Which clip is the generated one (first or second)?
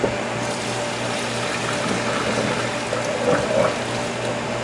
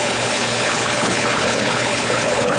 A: second